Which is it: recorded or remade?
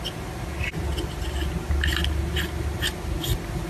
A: recorded